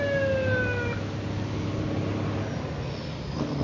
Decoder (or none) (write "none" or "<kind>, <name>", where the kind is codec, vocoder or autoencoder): none